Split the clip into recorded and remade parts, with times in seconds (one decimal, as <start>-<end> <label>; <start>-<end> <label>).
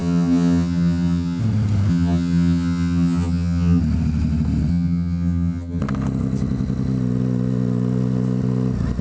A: 0.0-1.4 remade; 1.4-1.9 recorded; 1.9-3.8 remade; 3.8-4.7 recorded; 4.7-5.8 remade; 5.8-9.0 recorded